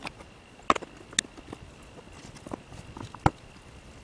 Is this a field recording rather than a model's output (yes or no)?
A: yes